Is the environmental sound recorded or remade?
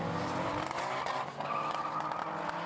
recorded